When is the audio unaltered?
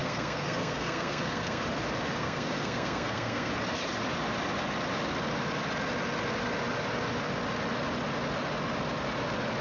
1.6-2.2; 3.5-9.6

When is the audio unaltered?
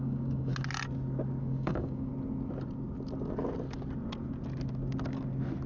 0.5-1.4; 2.1-5.7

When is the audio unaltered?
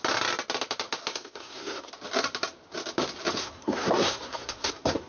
0.0-1.1; 1.9-3.4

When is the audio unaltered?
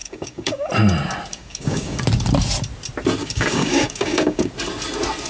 0.7-1.3; 2.0-3.2; 4.5-5.3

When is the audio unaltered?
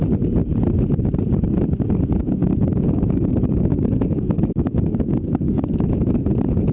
0.0-2.2; 5.7-6.7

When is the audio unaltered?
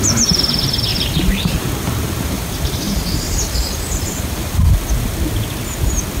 0.0-0.9; 4.6-6.2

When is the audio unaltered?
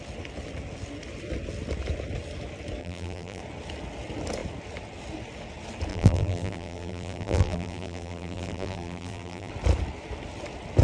0.0-2.8; 3.4-5.9; 9.5-10.8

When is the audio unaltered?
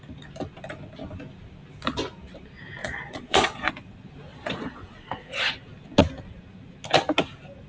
0.0-2.8; 3.7-4.3; 5.5-7.7